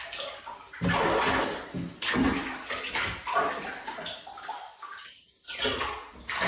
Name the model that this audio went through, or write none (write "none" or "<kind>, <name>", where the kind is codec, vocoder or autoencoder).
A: none